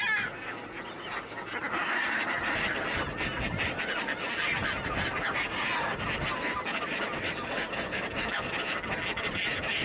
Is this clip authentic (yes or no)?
yes